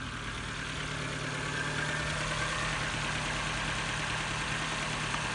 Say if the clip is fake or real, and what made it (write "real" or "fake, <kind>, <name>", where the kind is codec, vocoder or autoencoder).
real